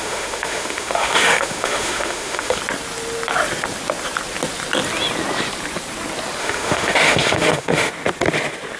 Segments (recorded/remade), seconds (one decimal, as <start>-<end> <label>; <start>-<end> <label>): 0.0-2.6 remade; 2.6-6.4 recorded; 6.4-7.9 remade; 7.9-8.8 recorded